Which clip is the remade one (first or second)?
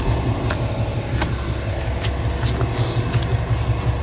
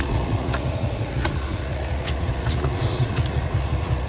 second